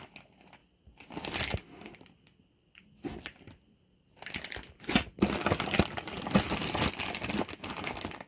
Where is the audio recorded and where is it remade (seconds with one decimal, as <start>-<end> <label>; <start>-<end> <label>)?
0.0-8.3 recorded